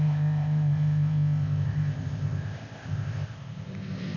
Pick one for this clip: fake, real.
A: fake